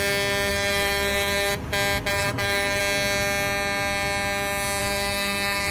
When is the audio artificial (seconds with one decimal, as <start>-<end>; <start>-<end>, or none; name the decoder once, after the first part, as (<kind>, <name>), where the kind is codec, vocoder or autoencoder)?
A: 0.5-1.5 (codec, SNAC); 2.1-2.8; 4.8-5.7